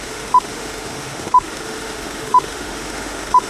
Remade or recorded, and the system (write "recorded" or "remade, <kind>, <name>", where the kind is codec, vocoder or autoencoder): remade, autoencoder, DAC-VAE